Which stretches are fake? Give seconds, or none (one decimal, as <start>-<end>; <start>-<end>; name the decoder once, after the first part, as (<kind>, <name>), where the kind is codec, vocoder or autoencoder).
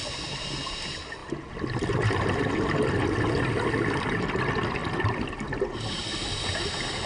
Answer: none